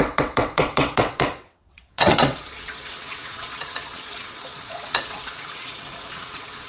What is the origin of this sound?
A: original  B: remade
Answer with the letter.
B